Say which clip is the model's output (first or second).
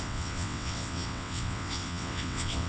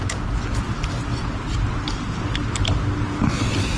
first